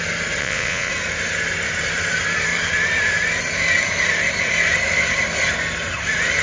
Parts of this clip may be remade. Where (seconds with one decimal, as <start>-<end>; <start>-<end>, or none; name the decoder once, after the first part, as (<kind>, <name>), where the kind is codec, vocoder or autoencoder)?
0.4-0.9 (vocoder, Vocos)